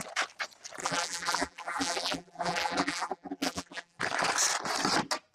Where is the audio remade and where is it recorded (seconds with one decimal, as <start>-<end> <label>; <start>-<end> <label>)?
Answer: 0.0-0.8 recorded; 0.8-4.0 remade; 4.0-5.3 recorded